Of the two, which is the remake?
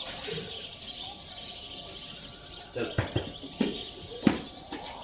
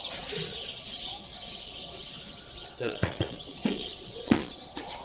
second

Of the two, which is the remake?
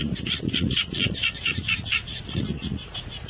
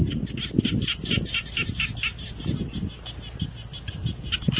first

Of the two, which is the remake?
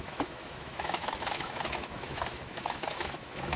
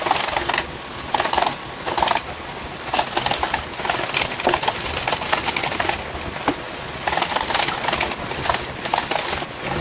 first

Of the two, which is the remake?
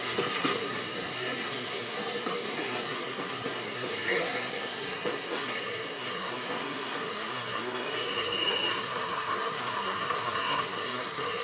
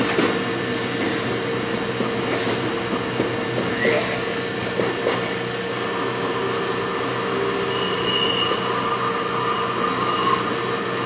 first